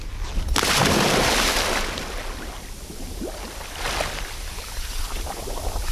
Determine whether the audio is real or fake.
real